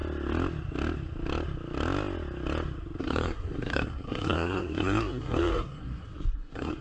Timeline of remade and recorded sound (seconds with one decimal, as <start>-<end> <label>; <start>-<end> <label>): 0.0-3.0 recorded; 3.0-6.8 remade

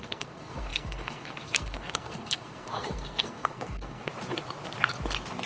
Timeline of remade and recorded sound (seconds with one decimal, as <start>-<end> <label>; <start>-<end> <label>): 0.0-4.1 remade; 4.1-5.5 recorded

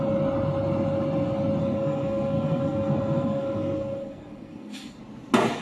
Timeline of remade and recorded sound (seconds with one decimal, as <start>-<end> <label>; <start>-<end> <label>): 0.0-1.6 recorded; 1.6-5.0 remade; 5.0-5.6 recorded

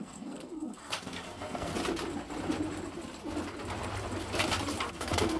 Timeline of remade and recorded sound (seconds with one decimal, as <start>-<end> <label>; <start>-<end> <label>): 0.0-1.7 remade; 1.7-4.9 recorded; 4.9-5.4 remade

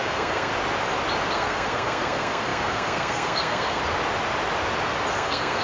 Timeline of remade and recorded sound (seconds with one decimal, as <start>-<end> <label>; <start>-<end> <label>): 0.0-0.5 remade; 0.5-1.3 recorded; 1.3-3.8 remade; 3.8-5.1 recorded; 5.1-5.6 remade

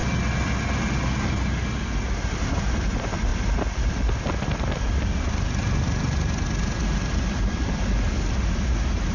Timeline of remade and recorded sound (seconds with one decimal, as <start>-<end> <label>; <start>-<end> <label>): 0.0-9.1 recorded

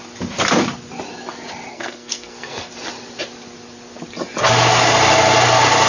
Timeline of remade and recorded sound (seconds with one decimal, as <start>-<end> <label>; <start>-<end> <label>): 0.0-1.7 recorded; 1.7-2.7 remade; 2.7-5.9 recorded

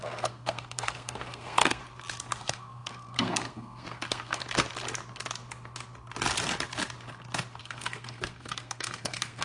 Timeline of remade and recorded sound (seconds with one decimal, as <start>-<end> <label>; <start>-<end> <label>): 0.0-1.8 remade; 1.8-2.4 recorded; 2.4-4.4 remade; 4.4-7.6 recorded; 7.6-9.4 remade